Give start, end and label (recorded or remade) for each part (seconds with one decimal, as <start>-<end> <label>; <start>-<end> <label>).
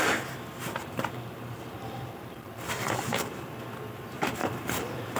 0.0-0.8 recorded; 0.8-3.5 remade; 3.5-4.4 recorded; 4.4-5.2 remade